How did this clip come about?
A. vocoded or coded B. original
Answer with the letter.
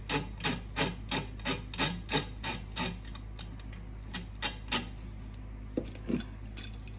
B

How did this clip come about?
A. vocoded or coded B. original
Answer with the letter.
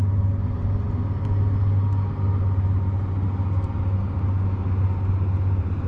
B